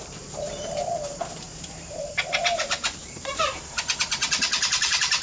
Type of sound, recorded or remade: remade